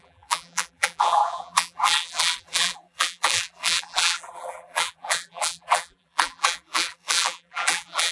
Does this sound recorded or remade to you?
remade